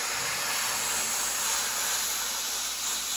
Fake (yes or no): no